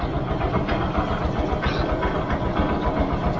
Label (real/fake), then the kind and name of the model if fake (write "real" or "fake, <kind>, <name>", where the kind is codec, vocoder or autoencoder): real